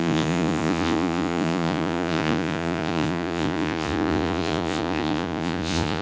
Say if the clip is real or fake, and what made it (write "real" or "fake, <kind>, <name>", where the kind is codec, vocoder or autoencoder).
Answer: fake, vocoder, Vocos